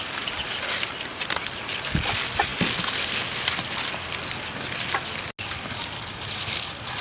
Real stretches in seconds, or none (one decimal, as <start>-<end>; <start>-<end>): 0.0-7.0